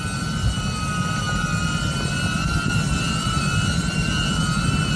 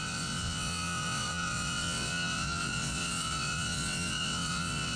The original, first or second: first